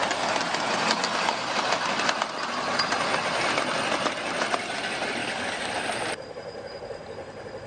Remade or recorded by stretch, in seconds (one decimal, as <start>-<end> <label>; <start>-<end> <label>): 0.0-5.2 recorded; 5.2-5.7 remade; 5.7-7.7 recorded

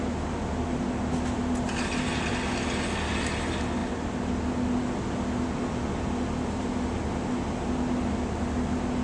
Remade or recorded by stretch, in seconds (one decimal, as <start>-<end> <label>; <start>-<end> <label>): 0.0-9.0 recorded

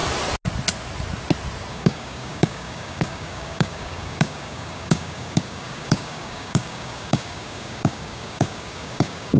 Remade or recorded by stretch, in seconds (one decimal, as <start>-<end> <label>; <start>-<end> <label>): 0.0-1.7 recorded; 1.7-9.4 remade

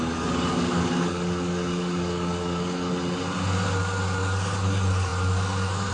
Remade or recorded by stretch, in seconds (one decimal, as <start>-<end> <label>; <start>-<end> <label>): 0.0-2.9 remade; 2.9-5.9 recorded

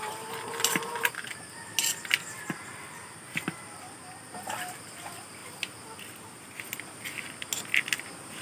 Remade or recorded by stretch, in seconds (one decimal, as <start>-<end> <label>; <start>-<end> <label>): 0.0-8.4 recorded

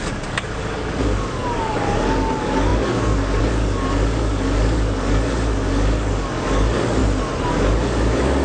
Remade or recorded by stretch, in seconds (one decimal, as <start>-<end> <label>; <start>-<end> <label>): 0.0-7.0 remade; 7.0-7.5 recorded; 7.5-8.4 remade

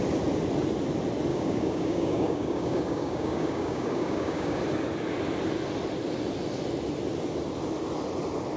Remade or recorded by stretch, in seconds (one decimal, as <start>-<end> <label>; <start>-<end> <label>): 0.0-1.3 recorded; 1.3-4.6 remade; 4.6-8.6 recorded

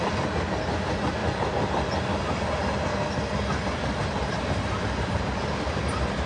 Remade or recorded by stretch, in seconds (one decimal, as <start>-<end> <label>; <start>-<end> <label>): 0.0-6.3 recorded